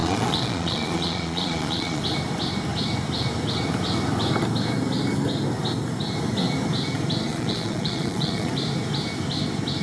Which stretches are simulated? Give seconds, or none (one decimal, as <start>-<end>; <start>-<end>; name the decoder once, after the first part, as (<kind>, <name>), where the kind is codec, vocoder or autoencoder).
0.0-2.0 (vocoder, Vocos); 7.3-8.5